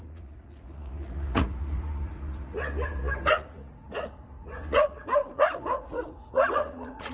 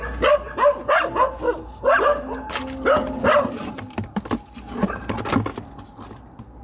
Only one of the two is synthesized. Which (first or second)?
first